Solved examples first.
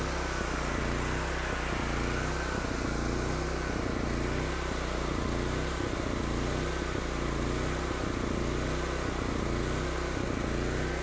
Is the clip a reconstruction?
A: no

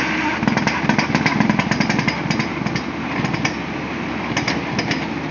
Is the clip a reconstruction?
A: no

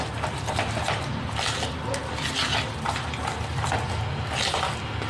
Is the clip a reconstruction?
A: no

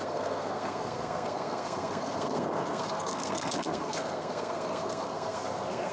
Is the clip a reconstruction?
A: yes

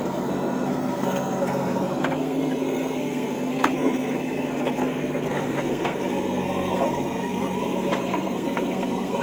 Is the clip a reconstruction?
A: yes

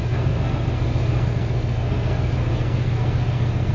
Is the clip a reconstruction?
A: yes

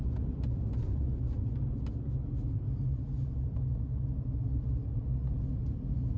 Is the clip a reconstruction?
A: no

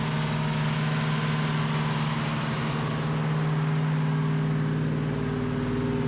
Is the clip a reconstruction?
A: no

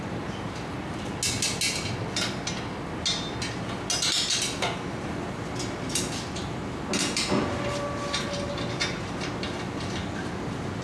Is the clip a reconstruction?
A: no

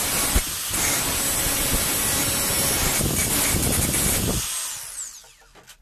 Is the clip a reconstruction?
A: no